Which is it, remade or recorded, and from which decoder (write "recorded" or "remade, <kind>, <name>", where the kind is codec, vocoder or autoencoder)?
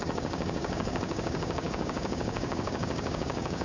remade, codec, DAC